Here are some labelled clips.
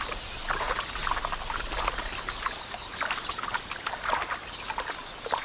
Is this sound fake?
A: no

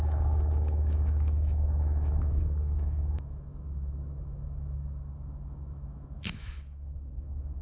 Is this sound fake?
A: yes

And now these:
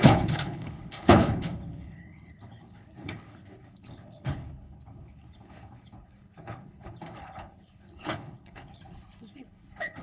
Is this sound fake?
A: yes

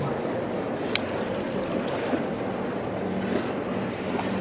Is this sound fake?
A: no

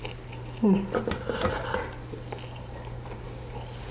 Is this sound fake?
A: no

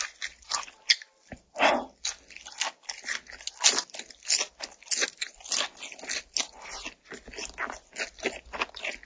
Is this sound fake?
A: no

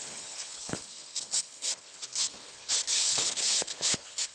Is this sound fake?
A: yes